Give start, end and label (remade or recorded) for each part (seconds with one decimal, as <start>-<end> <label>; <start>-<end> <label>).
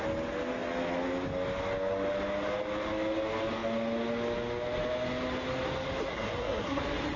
0.0-6.1 recorded; 6.1-6.8 remade; 6.8-7.2 recorded